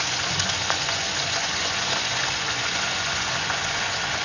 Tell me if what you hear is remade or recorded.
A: remade